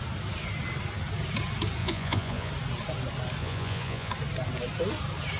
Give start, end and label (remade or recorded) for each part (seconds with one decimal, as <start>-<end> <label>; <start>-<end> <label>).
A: 0.0-1.8 recorded; 1.8-2.5 remade; 2.5-3.4 recorded; 3.4-4.1 remade; 4.1-5.4 recorded